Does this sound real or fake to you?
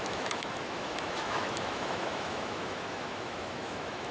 fake